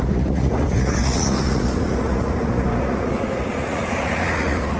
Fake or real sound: fake